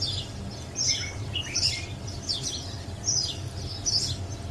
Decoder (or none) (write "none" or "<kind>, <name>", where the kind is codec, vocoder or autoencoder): none